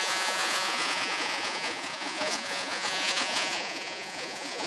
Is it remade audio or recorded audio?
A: remade